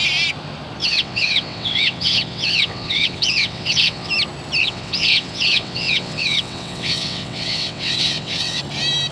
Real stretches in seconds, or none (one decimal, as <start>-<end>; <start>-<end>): 0.0-0.8; 4.1-4.6; 8.6-9.1